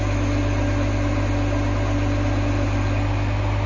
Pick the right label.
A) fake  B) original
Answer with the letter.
B